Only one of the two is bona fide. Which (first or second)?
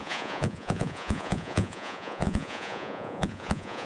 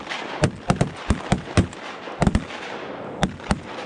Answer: second